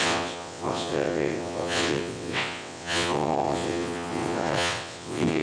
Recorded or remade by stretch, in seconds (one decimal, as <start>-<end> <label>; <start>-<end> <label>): 0.0-5.4 remade